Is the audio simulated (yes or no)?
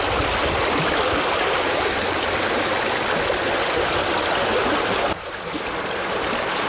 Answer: no